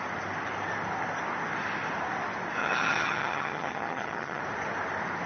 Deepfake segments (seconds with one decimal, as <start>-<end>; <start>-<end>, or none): 2.6-4.4

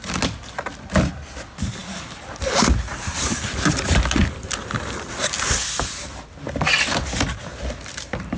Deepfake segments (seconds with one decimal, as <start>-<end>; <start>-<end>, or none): none

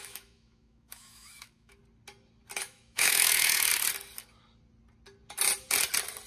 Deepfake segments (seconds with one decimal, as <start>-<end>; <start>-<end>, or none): 0.0-1.8; 2.6-3.7

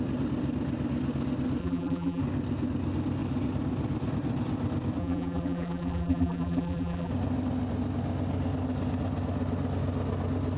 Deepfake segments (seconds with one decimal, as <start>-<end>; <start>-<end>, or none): 1.6-2.2; 5.0-7.1

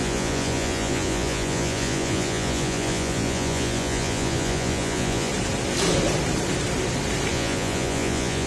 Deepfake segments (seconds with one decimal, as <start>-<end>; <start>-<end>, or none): 0.0-5.3; 7.3-8.5

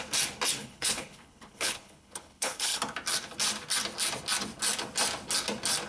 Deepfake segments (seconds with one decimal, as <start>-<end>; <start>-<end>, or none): 0.6-2.8

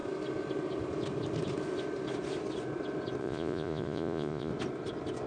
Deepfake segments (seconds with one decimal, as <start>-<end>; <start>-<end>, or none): 3.2-4.5

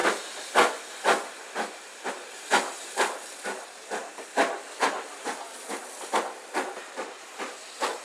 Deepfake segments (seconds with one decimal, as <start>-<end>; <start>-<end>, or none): none